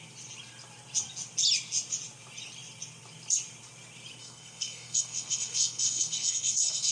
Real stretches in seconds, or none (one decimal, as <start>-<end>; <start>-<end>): 0.0-4.2